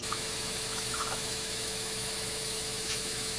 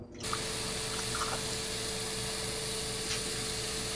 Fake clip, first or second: first